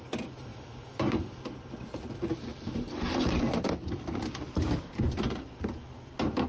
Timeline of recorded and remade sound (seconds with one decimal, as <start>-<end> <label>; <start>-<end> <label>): 0.0-0.5 recorded; 0.5-1.4 remade; 1.4-2.5 recorded; 2.5-5.5 remade; 5.5-6.5 recorded